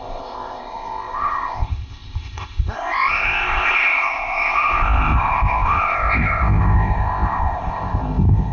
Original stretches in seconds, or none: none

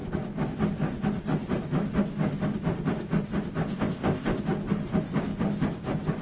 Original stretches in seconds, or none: 0.0-3.7; 4.4-6.2

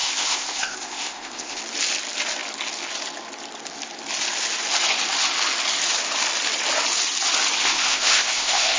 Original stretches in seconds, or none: 1.6-7.6

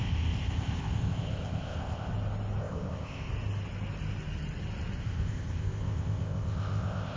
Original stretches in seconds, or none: 2.1-2.6; 3.3-5.0

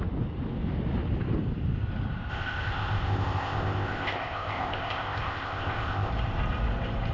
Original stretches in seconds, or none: 0.0-2.3; 6.1-7.1

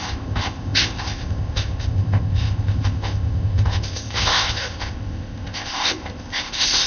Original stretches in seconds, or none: none